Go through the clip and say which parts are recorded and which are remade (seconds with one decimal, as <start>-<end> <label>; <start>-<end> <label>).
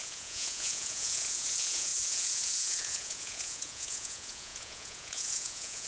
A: 0.0-5.9 remade